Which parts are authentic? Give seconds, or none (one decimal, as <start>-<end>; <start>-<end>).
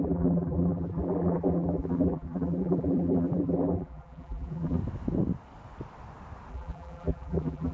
4.8-6.5